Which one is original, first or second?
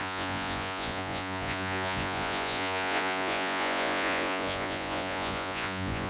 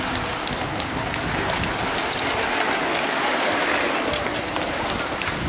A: second